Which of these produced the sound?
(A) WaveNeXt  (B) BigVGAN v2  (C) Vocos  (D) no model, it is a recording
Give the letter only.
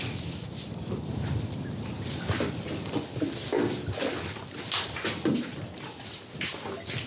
D